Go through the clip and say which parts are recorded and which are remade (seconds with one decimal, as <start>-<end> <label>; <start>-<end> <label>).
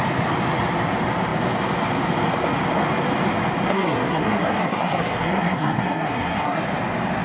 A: 0.0-3.7 recorded; 3.7-6.6 remade; 6.6-7.2 recorded